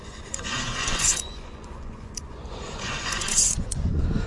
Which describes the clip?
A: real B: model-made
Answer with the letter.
B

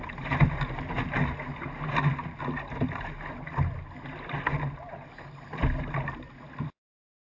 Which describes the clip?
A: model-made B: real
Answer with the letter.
B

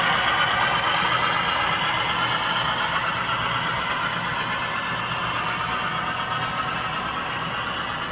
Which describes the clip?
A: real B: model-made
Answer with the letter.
A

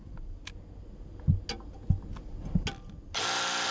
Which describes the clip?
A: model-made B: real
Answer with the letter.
B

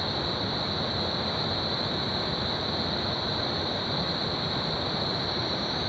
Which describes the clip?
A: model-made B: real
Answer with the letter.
B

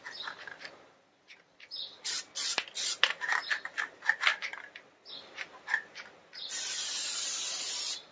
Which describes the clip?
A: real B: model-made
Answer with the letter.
A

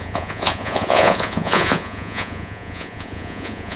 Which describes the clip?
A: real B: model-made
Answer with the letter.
B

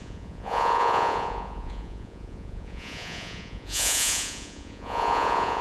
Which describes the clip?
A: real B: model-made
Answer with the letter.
B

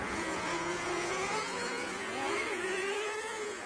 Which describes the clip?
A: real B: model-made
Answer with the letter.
B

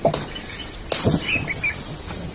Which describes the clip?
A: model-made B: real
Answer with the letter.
B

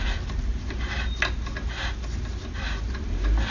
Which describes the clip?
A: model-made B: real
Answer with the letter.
B